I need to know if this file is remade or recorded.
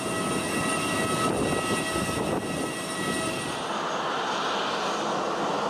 recorded